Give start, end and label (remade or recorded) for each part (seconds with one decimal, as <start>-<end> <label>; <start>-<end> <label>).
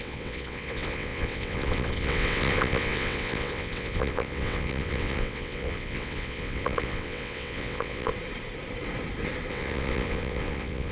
0.0-8.1 remade; 8.1-9.5 recorded; 9.5-10.9 remade